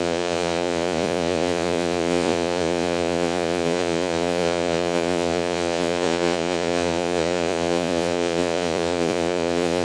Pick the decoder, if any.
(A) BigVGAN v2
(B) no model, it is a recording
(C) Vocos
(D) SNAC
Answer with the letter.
C